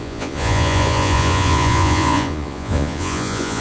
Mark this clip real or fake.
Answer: fake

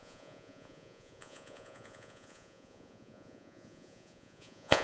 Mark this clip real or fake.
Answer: fake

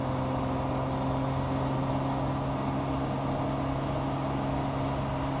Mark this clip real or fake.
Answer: real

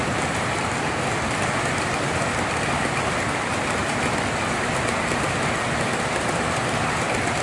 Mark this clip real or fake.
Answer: real